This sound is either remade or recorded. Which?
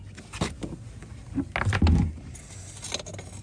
recorded